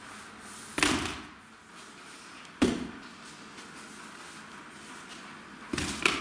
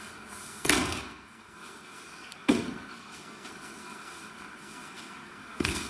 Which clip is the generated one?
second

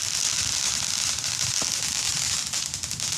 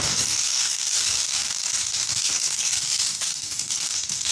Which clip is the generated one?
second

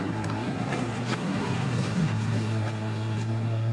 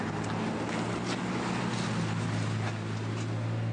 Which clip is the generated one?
first